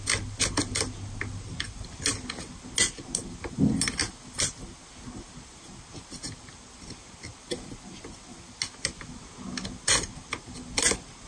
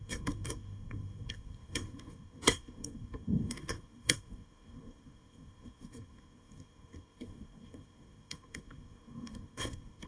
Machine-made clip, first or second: second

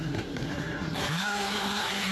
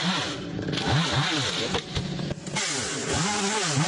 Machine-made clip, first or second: first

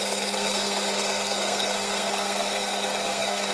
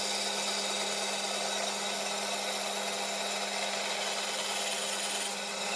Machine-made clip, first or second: first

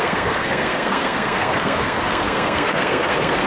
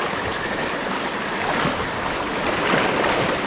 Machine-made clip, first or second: first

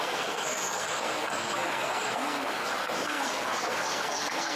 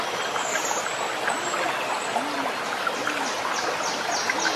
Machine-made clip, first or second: first